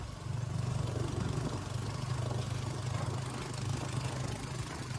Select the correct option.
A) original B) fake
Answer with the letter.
A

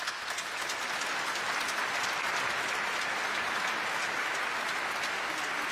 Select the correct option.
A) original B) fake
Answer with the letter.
A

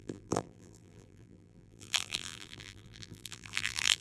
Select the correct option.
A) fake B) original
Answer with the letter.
A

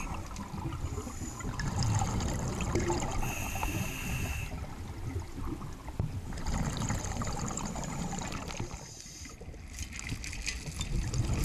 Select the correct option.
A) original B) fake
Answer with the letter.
A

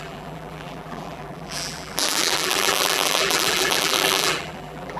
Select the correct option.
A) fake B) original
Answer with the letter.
A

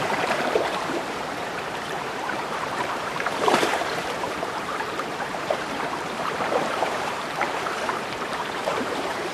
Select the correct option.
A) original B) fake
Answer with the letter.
B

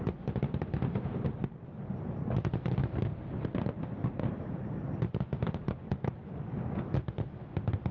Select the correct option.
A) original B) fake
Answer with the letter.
B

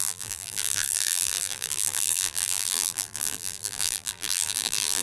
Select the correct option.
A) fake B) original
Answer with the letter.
A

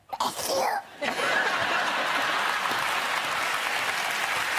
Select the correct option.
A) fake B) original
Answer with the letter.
B